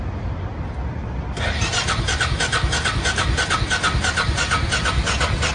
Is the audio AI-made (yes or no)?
no